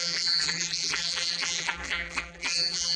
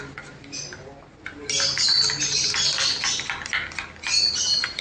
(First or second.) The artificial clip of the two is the first